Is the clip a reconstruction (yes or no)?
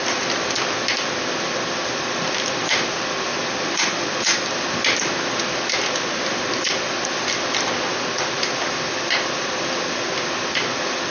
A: no